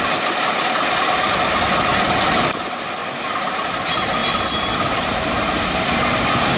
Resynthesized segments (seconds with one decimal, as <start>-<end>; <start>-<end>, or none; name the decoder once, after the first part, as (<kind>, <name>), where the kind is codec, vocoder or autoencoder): 4.2-5.6 (vocoder, BigVGAN v2)